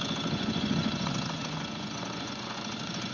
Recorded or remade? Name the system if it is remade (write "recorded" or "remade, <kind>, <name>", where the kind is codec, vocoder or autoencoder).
remade, vocoder, Vocos